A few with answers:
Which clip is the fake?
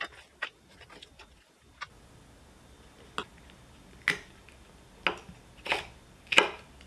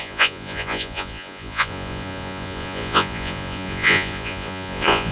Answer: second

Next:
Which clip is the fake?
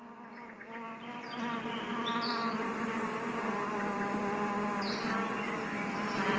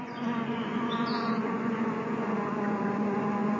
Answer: second